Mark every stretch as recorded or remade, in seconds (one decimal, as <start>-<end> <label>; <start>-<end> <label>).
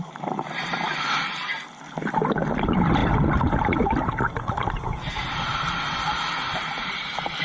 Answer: 0.0-7.4 recorded